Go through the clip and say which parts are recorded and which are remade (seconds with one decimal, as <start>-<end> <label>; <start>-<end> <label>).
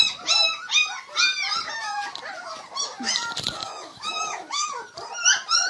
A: 0.0-3.6 recorded; 3.6-4.7 remade; 4.7-5.7 recorded